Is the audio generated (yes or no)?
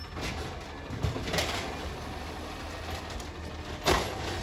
no